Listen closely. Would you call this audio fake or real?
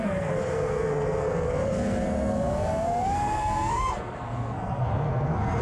fake